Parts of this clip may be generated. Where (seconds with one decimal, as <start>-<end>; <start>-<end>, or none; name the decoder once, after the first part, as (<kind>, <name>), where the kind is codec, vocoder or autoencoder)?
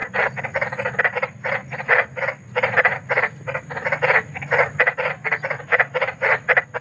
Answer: none